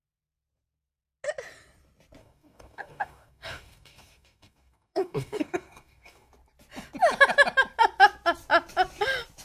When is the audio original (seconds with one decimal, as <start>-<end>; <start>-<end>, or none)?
0.0-2.2; 6.3-9.4